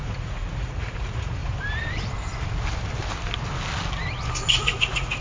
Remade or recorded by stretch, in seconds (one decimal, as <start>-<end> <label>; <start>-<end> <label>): 0.0-1.4 remade; 1.4-4.5 recorded; 4.5-5.2 remade